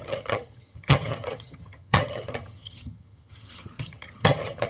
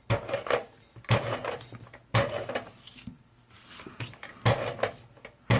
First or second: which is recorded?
second